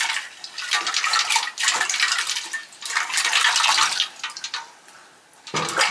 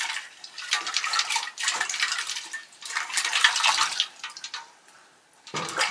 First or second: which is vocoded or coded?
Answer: second